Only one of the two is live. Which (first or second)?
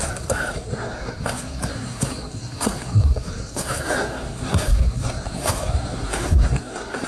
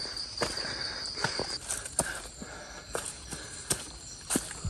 second